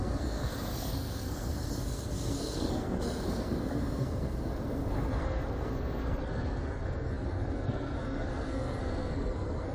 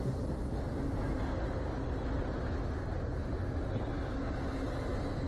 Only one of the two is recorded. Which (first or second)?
second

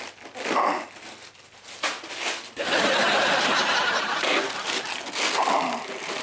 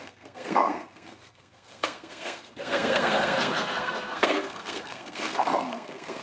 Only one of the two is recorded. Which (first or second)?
first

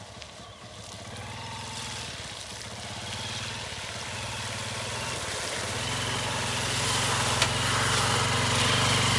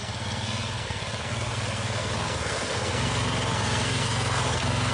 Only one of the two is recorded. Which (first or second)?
first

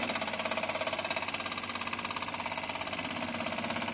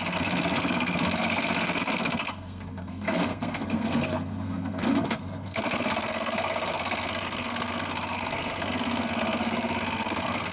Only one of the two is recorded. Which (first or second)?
first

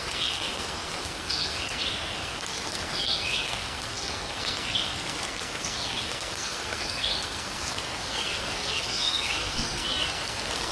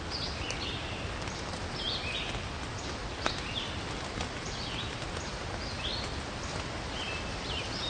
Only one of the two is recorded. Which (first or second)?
second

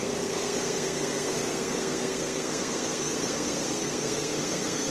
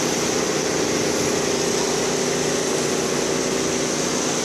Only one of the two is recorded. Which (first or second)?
second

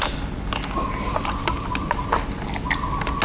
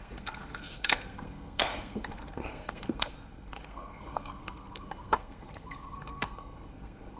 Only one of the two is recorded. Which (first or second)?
first